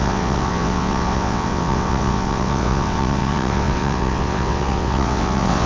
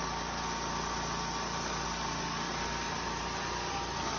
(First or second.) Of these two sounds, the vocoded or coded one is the first